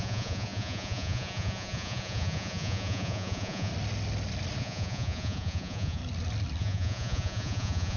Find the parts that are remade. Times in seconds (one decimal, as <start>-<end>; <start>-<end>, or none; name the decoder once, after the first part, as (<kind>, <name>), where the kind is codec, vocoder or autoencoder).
0.0-3.7 (vocoder, Vocos); 4.6-6.0; 6.6-8.0